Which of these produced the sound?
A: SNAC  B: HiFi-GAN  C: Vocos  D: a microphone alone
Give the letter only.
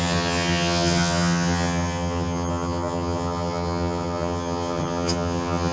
B